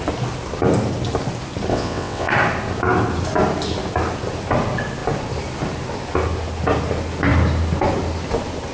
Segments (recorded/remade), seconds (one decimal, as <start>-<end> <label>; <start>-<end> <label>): 0.0-1.7 recorded; 1.7-2.3 remade; 2.3-8.7 recorded

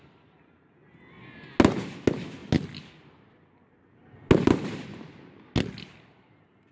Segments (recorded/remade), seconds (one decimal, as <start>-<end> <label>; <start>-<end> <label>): 0.0-6.7 recorded

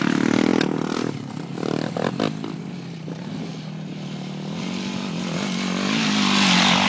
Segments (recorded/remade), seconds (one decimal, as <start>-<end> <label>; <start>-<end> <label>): 0.0-6.9 recorded

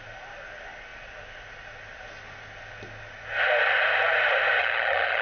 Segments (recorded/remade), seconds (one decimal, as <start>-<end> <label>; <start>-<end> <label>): 0.0-4.6 recorded; 4.6-5.2 remade

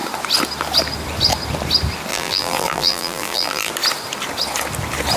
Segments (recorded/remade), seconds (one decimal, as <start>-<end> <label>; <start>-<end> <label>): 0.0-2.1 recorded; 2.1-3.7 remade; 3.7-5.2 recorded